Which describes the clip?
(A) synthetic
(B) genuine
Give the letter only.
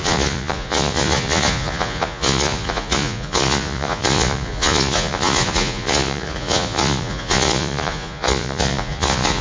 A